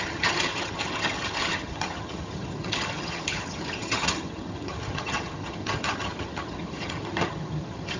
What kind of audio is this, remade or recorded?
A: remade